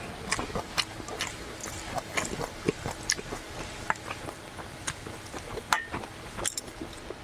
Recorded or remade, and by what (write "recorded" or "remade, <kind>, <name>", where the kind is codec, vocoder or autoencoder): recorded